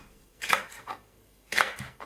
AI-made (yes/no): yes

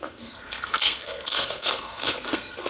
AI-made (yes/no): yes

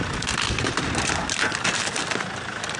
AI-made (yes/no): no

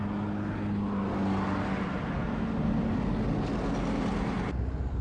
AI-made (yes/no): no